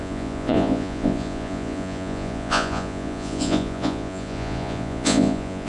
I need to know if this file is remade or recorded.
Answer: remade